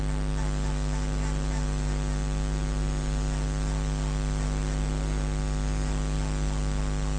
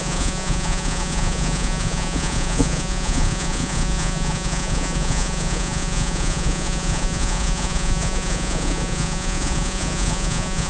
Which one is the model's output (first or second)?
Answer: second